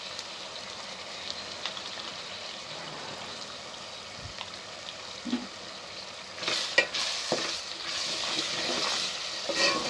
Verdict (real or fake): real